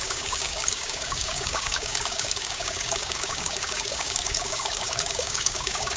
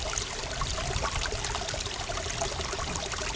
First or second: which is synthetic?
first